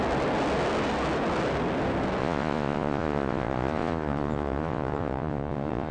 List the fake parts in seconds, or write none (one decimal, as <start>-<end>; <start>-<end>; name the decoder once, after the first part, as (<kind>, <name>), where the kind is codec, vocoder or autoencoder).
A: 2.2-5.9 (vocoder, Vocos)